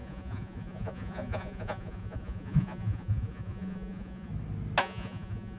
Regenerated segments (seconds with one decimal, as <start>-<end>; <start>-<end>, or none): 0.0-4.3; 4.8-5.6

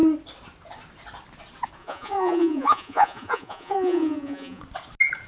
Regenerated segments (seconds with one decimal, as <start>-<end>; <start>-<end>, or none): 1.8-4.6